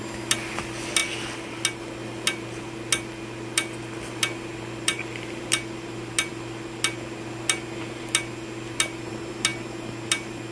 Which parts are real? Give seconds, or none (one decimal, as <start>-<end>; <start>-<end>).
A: 0.0-10.5